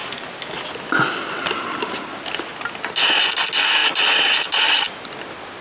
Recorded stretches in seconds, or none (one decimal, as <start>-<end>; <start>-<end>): 0.0-5.6